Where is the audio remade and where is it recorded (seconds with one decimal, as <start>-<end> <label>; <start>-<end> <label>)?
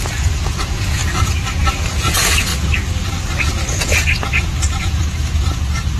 0.0-2.5 remade; 2.5-3.4 recorded; 3.4-6.0 remade